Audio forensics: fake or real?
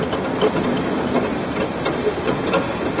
real